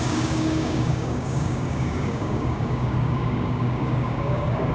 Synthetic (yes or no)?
yes